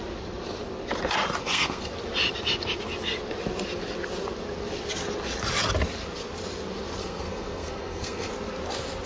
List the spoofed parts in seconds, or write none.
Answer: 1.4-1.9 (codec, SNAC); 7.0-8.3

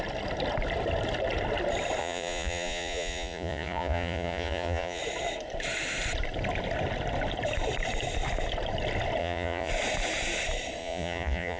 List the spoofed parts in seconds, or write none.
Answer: 2.0-5.0 (vocoder, Vocos); 9.2-9.7; 10.8-11.6